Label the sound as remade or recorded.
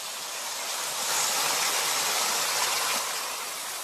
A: recorded